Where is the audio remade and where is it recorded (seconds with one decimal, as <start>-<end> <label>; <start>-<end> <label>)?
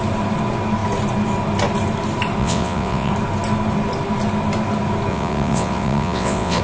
0.0-2.4 recorded; 2.4-3.1 remade; 3.1-5.1 recorded; 5.1-6.6 remade